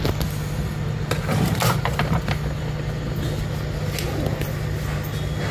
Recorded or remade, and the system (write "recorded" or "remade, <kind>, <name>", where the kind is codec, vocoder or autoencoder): recorded